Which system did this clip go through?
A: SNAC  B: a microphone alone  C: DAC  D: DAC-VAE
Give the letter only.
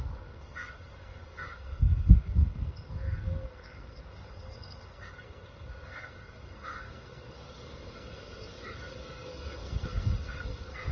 A